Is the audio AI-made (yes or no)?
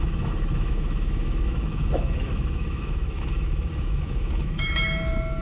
yes